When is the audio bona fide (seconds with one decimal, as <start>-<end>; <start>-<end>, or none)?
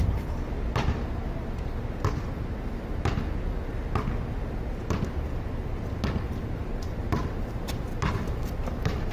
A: 0.0-6.6; 7.1-9.1